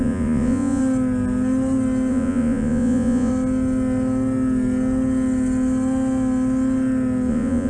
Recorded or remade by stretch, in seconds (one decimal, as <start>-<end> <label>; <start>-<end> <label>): 0.0-0.8 remade; 0.8-2.1 recorded; 2.1-3.3 remade; 3.3-7.3 recorded; 7.3-7.7 remade